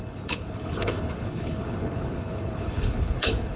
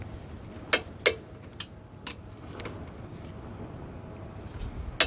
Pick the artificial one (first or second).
first